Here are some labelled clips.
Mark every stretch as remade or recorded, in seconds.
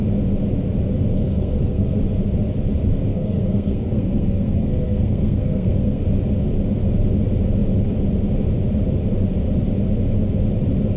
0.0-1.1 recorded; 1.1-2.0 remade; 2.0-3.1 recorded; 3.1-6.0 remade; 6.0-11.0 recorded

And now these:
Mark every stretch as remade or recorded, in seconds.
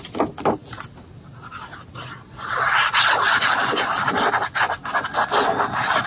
0.0-6.1 recorded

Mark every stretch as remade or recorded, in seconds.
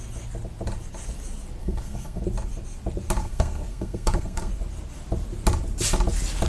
0.0-1.6 recorded; 1.6-2.2 remade; 2.2-3.2 recorded; 3.2-4.5 remade; 4.5-6.5 recorded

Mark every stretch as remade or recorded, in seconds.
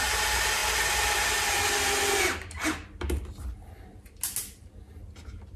0.0-5.6 recorded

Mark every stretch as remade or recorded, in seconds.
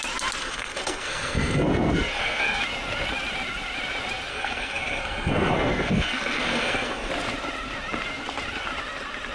0.0-0.4 recorded; 0.4-2.6 remade; 2.6-4.3 recorded; 4.3-7.1 remade; 7.1-9.3 recorded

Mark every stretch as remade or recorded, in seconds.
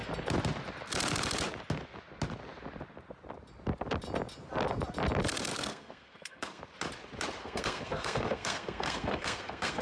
0.0-5.5 recorded; 5.5-6.6 remade; 6.6-7.4 recorded; 7.4-9.8 remade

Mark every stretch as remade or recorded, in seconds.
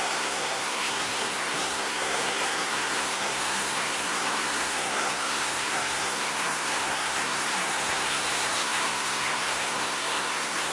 0.0-10.7 remade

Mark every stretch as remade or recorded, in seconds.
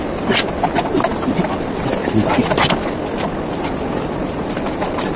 0.0-5.2 recorded